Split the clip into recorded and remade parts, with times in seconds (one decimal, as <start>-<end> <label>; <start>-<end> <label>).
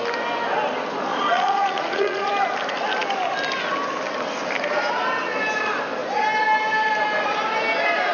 0.0-1.1 recorded; 1.1-2.3 remade; 2.3-8.1 recorded